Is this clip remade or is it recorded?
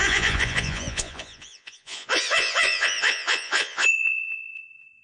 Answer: remade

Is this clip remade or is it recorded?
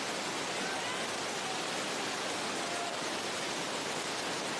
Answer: recorded